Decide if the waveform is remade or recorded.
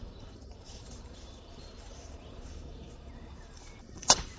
remade